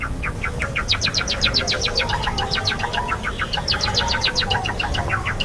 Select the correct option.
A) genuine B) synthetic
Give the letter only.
B